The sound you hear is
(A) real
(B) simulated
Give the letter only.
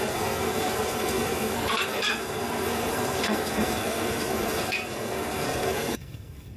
B